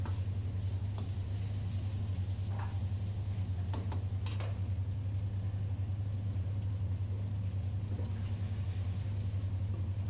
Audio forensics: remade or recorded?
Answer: recorded